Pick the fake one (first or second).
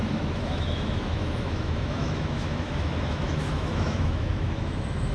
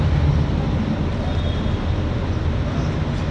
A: first